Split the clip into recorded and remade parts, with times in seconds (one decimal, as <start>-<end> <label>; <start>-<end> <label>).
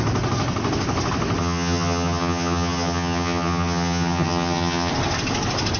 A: 0.0-1.4 recorded; 1.4-4.9 remade; 4.9-5.8 recorded